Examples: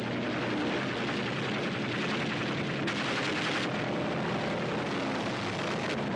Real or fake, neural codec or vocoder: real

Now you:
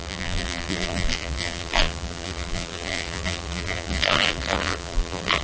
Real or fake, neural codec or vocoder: fake, vocoder, BigVGAN v2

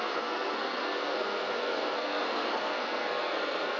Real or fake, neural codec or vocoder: fake, codec, SNAC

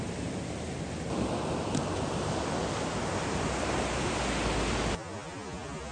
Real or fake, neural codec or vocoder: real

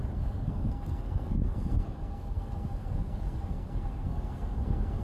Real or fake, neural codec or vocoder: fake, codec, SNAC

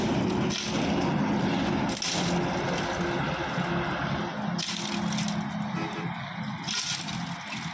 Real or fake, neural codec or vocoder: real